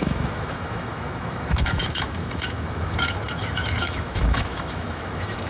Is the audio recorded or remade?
remade